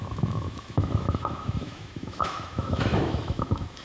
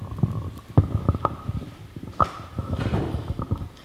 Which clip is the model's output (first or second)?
first